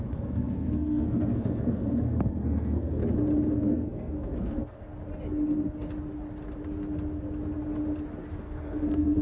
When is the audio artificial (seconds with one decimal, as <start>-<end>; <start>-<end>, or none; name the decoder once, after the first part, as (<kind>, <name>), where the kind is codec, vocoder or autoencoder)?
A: 0.0-3.0 (codec, SNAC); 3.5-4.9; 8.4-9.2